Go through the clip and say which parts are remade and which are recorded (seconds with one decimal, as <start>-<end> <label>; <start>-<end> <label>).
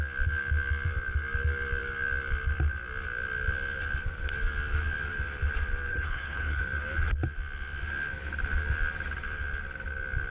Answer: 0.0-5.9 recorded; 5.9-6.6 remade; 6.6-10.3 recorded